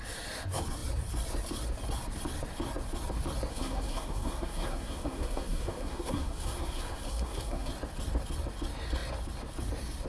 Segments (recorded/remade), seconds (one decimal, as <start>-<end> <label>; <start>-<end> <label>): 0.0-3.5 recorded; 3.5-7.7 remade; 7.7-10.1 recorded